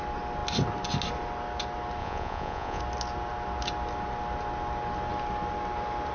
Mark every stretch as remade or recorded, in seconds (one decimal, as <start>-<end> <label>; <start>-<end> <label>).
0.0-2.0 recorded; 2.0-2.8 remade; 2.8-6.1 recorded